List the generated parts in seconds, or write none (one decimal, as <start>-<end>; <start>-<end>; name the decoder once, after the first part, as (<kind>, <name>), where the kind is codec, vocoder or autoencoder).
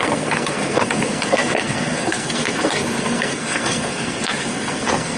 0.0-5.2 (codec, SNAC)